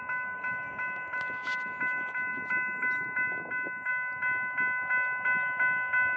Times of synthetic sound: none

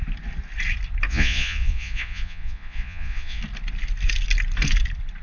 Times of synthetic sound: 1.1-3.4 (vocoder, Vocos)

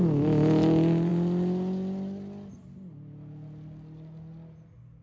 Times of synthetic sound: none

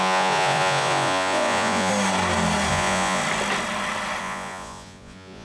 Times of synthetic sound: 0.0-1.9 (vocoder, Vocos); 2.7-3.2; 4.2-5.4

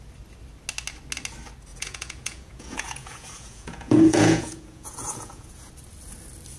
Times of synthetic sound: 1.7-5.7 (vocoder, Vocos)

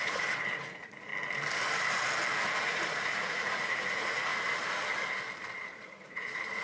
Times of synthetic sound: 0.0-1.1 (vocoder, Vocos); 2.6-4.3; 5.6-6.6

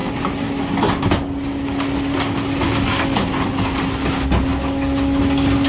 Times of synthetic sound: none

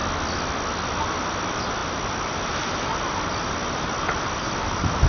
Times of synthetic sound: none